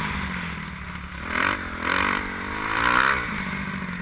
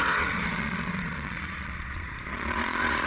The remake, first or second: second